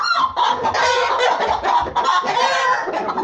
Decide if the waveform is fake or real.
real